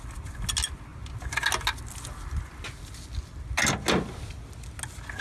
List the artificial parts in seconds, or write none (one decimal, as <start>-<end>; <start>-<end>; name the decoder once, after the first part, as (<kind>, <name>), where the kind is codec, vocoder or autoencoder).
none